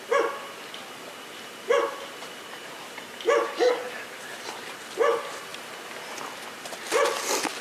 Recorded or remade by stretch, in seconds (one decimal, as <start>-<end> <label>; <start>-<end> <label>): 0.0-7.6 recorded